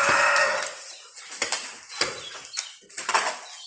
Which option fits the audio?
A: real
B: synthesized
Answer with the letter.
A